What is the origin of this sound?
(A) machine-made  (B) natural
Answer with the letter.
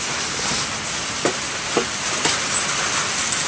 B